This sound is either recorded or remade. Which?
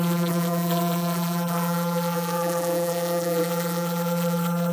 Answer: remade